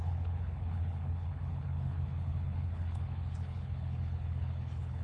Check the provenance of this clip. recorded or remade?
remade